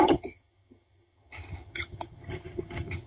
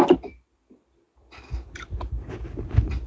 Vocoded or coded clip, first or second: first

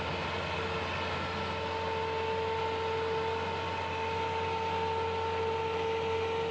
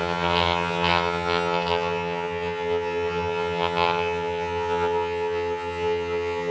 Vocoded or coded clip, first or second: second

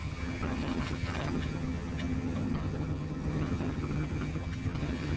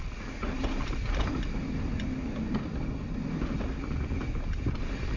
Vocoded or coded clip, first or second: first